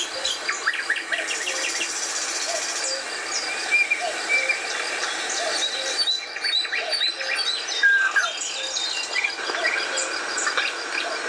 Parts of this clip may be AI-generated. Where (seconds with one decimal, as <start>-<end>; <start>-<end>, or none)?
3.6-6.5